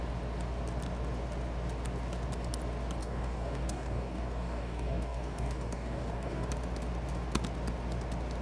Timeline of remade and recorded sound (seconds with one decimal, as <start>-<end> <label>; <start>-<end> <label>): 0.0-3.0 recorded; 3.0-6.5 remade; 6.5-8.4 recorded